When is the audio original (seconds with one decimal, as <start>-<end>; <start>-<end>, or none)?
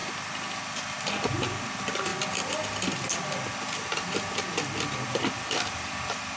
0.0-6.4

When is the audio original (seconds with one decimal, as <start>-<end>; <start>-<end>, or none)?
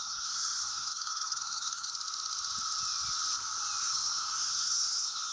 1.9-3.8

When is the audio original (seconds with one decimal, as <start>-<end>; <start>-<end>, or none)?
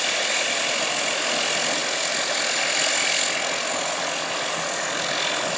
0.0-5.6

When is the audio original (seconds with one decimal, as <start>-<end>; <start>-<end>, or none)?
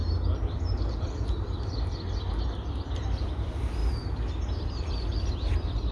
0.0-5.9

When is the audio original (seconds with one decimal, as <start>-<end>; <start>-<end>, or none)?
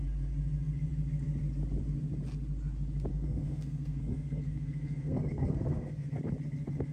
0.0-3.1; 6.2-6.9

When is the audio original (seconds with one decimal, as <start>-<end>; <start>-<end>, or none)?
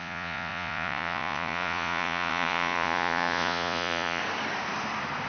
4.2-5.3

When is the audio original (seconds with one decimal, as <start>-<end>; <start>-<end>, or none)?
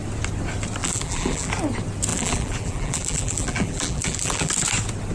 0.0-0.8; 1.5-2.1; 4.5-5.1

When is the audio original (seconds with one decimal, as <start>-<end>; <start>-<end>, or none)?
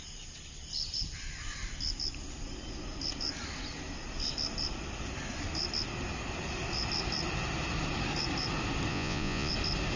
0.0-8.9; 9.5-10.0